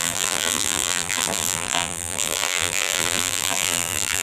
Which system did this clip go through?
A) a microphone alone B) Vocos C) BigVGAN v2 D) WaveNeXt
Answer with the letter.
C